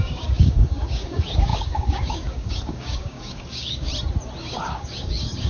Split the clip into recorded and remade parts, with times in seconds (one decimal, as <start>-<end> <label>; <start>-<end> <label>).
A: 0.0-3.9 remade; 3.9-4.4 recorded; 4.4-5.5 remade